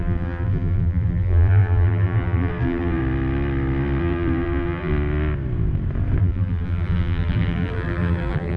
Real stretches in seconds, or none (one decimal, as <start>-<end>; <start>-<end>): 3.0-4.0; 4.9-6.2